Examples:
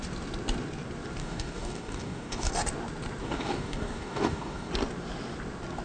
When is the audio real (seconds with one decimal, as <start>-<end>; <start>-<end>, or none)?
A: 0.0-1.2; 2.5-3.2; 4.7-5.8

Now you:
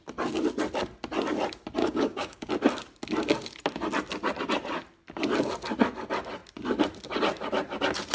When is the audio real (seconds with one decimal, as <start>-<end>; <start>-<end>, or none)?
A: 0.0-1.8; 2.5-8.1

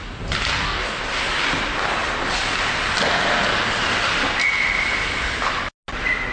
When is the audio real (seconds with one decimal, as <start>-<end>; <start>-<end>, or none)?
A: 0.0-0.5; 1.0-6.3